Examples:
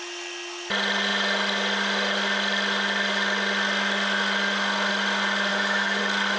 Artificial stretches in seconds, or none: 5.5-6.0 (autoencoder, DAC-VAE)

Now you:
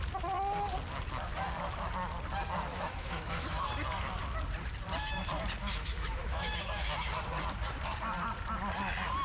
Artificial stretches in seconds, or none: 2.7-3.7 (autoencoder, DAC-VAE); 5.6-6.8

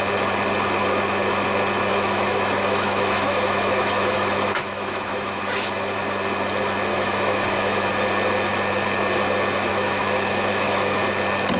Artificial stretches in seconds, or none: 1.9-5.4 (autoencoder, DAC-VAE); 6.9-7.9; 9.6-11.0

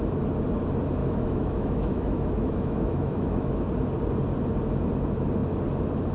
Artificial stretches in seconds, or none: 1.0-3.7 (autoencoder, DAC-VAE)

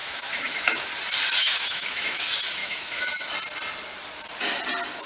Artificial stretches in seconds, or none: 0.0-0.9 (autoencoder, DAC-VAE); 1.4-2.2; 2.6-3.3

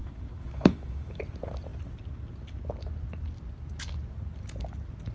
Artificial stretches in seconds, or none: 0.0-1.2 (autoencoder, DAC-VAE)

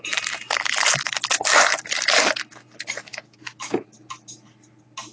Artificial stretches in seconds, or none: 3.1-3.8 (autoencoder, DAC-VAE)